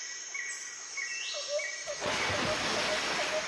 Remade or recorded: recorded